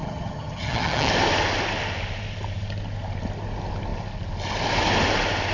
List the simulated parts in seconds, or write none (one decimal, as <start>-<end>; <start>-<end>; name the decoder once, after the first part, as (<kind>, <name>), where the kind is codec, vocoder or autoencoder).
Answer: 0.0-1.1 (vocoder, HiFi-GAN)